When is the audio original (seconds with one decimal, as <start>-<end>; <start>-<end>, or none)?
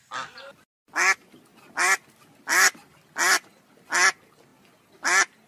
0.0-5.5